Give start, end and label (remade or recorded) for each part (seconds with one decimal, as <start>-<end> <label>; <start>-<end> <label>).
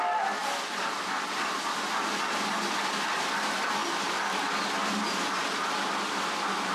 0.0-6.7 recorded